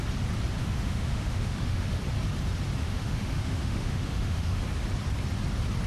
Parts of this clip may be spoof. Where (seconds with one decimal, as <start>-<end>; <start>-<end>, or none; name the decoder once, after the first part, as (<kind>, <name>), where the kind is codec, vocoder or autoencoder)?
0.6-2.0 (autoencoder, DAC-VAE); 2.8-4.6